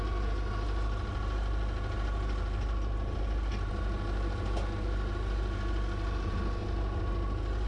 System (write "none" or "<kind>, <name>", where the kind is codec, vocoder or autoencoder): none